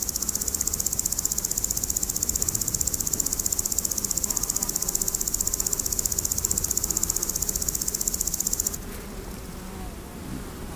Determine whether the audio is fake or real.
real